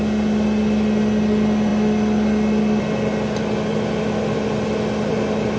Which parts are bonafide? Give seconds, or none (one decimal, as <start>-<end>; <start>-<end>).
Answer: 0.0-5.6